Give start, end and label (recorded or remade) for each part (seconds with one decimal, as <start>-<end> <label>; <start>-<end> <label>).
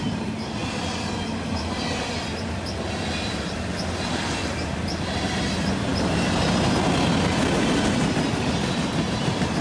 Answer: 0.0-9.6 recorded